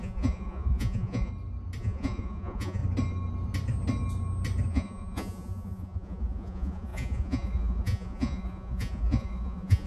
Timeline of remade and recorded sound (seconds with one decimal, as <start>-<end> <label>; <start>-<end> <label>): 0.0-1.3 remade; 1.3-1.8 recorded; 1.8-2.8 remade; 2.8-4.7 recorded; 4.7-9.9 remade